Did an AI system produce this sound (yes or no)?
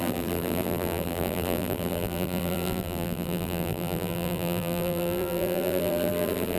yes